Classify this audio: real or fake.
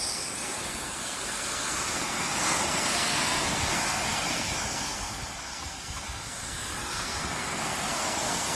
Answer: fake